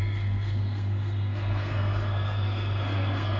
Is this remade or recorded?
remade